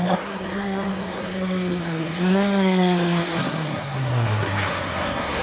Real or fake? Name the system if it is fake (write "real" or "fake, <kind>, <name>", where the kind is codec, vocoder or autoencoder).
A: fake, codec, SNAC